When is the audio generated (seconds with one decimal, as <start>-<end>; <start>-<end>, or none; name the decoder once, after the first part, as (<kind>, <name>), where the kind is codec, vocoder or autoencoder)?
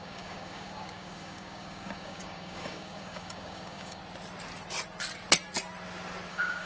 0.0-4.0 (codec, DAC); 6.3-6.7